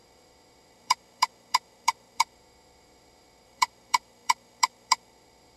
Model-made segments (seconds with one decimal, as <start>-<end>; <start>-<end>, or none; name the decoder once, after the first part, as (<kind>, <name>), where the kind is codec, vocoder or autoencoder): 0.0-5.6 (autoencoder, DAC-VAE)